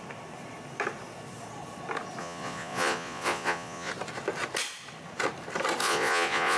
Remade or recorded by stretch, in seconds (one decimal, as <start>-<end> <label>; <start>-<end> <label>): 0.0-2.2 recorded; 2.2-3.9 remade; 3.9-5.8 recorded; 5.8-6.6 remade